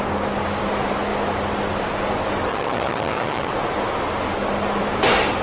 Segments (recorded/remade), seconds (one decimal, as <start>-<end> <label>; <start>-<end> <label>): 0.0-2.5 recorded; 2.5-3.5 remade; 3.5-5.4 recorded